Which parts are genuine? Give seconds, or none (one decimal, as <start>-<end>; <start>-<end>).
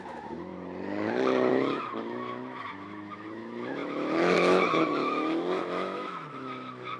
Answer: 0.5-1.5